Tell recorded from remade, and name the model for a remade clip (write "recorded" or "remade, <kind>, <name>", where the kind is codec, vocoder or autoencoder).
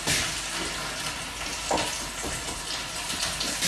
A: recorded